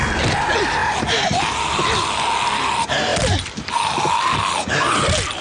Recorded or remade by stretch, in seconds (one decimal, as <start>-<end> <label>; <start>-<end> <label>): 0.0-5.4 recorded

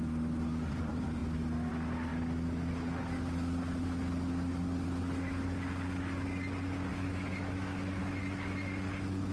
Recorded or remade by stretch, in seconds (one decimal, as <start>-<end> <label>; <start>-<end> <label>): 0.0-6.9 recorded; 6.9-8.0 remade; 8.0-9.3 recorded

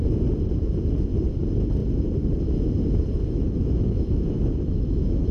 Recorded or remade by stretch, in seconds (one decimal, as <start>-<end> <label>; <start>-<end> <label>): 0.0-3.2 recorded; 3.2-5.3 remade

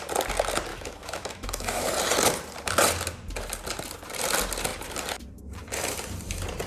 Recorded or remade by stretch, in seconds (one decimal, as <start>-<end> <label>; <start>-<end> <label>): 0.0-0.7 recorded; 0.7-1.9 remade; 1.9-6.7 recorded

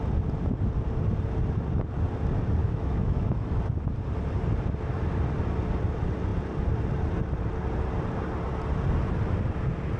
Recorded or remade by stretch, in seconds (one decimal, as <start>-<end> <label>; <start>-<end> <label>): 0.0-2.6 recorded; 2.6-3.6 remade; 3.6-10.0 recorded

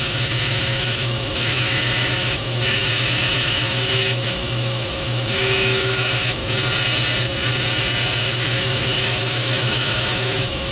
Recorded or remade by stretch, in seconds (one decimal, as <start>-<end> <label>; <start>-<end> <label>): 0.0-6.4 remade; 6.4-8.2 recorded; 8.2-10.7 remade

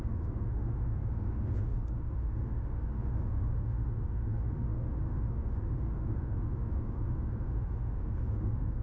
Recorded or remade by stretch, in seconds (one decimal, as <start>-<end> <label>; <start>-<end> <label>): 0.0-8.8 remade

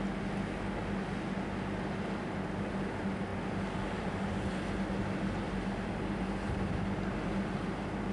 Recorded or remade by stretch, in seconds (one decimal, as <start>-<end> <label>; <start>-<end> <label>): 0.0-8.1 recorded